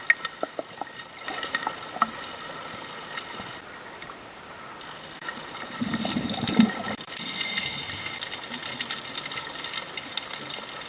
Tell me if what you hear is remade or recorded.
recorded